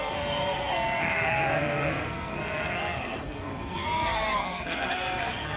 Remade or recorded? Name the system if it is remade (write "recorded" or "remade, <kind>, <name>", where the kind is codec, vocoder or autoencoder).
remade, codec, SNAC